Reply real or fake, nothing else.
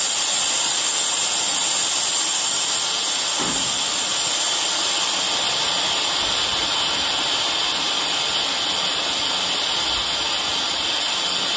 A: real